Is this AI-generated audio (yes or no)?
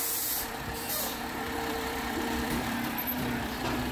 yes